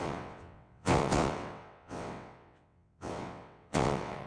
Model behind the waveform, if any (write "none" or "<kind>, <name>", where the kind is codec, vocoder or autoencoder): vocoder, WaveNeXt